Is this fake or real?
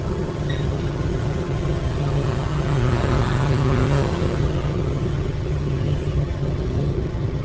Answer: fake